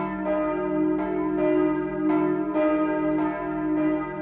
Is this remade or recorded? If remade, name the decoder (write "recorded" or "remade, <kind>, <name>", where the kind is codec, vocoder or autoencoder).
recorded